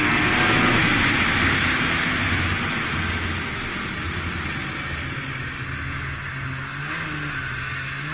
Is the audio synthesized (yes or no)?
no